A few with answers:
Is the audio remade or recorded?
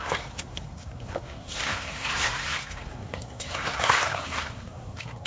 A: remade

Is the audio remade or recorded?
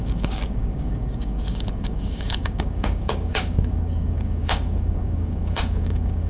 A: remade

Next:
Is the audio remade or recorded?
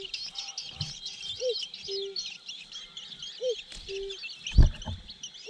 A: recorded